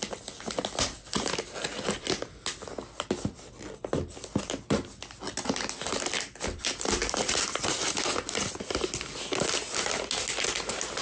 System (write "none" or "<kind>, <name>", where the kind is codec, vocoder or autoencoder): none